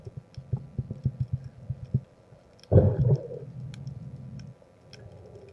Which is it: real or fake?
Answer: real